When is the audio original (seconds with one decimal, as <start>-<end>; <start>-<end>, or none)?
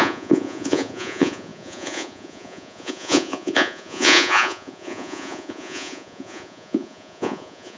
none